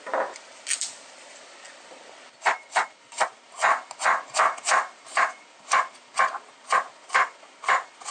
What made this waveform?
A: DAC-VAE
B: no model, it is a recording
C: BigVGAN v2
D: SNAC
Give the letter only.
B